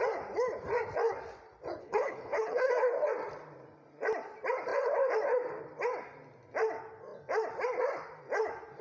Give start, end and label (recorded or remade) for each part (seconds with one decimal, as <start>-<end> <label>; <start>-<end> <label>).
0.0-1.8 recorded; 1.8-2.7 remade; 2.7-8.8 recorded